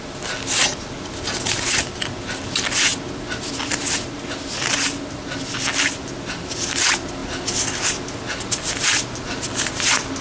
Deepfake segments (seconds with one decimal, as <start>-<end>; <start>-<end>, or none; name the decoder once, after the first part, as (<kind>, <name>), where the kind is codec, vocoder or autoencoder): none